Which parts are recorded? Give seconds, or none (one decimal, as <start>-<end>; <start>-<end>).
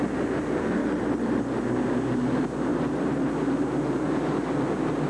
0.0-0.8; 1.6-2.7; 3.3-5.1